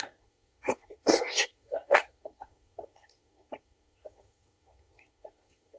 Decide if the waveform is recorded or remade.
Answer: remade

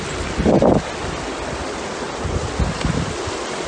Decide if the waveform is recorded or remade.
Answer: recorded